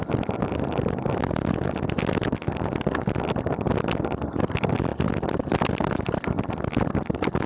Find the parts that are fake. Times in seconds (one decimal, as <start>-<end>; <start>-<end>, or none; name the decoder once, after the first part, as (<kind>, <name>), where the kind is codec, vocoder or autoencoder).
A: none